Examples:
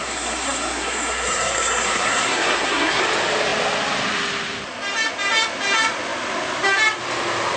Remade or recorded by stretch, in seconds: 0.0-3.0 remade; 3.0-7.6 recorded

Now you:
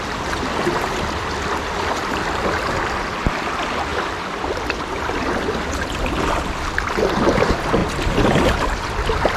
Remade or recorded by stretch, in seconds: 0.0-3.9 recorded; 3.9-5.7 remade; 5.7-7.8 recorded; 7.8-9.4 remade

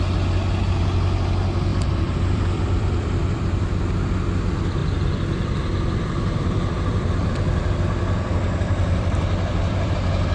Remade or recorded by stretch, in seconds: 0.0-1.7 recorded; 1.7-3.4 remade; 3.4-4.8 recorded; 4.8-9.9 remade; 9.9-10.3 recorded